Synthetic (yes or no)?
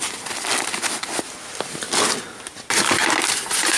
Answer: no